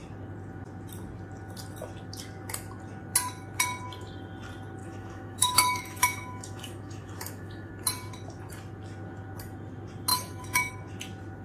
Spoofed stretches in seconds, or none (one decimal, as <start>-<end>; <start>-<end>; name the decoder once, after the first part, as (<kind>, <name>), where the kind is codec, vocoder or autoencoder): 4.8-7.7 (autoencoder, DAC-VAE); 10.1-10.7